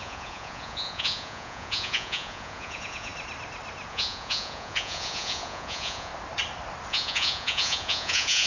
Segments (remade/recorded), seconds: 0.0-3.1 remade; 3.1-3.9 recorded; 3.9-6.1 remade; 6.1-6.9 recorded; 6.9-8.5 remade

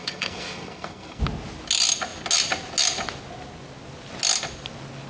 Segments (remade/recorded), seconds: 0.0-1.2 remade; 1.2-5.1 recorded

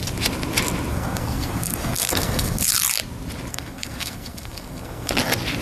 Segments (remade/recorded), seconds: 0.0-0.9 recorded; 0.9-2.6 remade; 2.6-3.5 recorded; 3.5-5.1 remade; 5.1-5.6 recorded

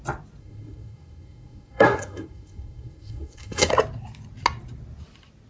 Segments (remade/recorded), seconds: 0.0-0.4 recorded; 0.4-3.7 remade; 3.7-5.5 recorded

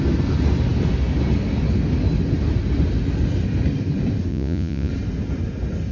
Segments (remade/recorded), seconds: 0.0-4.3 recorded; 4.3-4.9 remade; 4.9-5.9 recorded

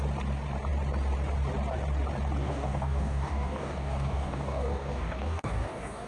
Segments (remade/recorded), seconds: 0.0-2.4 recorded; 2.4-6.1 remade